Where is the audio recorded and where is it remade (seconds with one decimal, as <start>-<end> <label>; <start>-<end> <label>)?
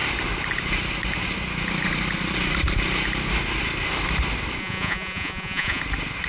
0.0-4.6 recorded; 4.6-5.8 remade; 5.8-6.3 recorded